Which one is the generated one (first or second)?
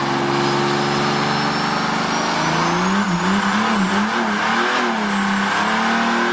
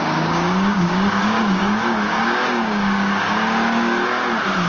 second